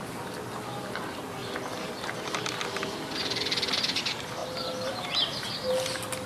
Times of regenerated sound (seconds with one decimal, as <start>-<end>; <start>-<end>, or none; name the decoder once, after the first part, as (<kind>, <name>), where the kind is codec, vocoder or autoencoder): none